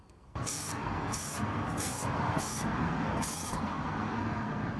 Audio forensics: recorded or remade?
remade